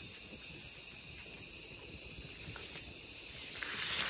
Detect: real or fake real